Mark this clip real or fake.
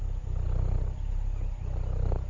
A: real